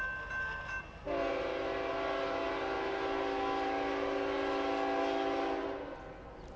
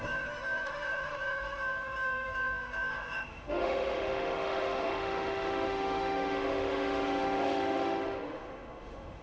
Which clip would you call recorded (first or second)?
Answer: first